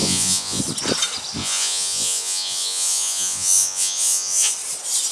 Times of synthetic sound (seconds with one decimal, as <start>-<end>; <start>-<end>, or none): 0.0-0.6; 1.4-4.5